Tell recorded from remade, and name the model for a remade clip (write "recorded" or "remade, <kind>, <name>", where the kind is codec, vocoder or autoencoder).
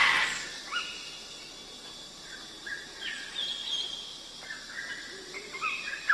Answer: recorded